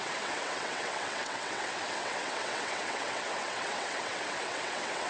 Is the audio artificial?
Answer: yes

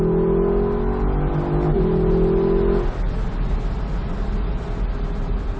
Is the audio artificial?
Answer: no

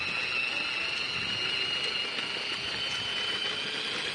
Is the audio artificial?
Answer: no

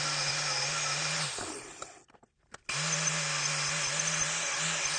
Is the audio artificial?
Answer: no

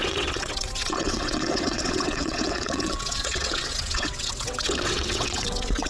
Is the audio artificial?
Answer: yes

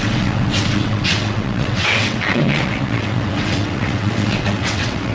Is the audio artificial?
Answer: yes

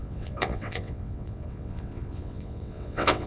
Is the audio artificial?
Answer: yes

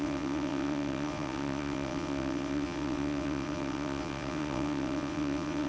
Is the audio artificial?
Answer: yes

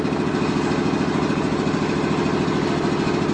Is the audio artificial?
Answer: no